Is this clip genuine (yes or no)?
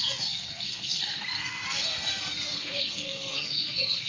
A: no